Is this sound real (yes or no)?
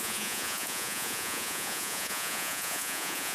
no